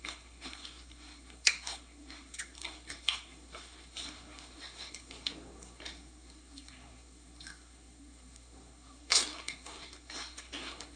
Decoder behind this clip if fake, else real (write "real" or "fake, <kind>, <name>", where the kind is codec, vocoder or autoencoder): fake, codec, SNAC